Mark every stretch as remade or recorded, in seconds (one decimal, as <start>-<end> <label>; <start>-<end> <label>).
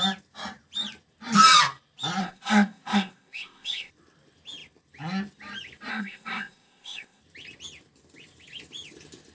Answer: 0.0-2.2 recorded; 2.2-3.9 remade; 3.9-5.9 recorded; 5.9-7.2 remade; 7.2-9.3 recorded